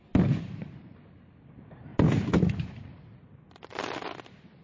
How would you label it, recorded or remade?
recorded